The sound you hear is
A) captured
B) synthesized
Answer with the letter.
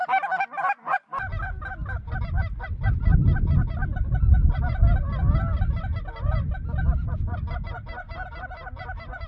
A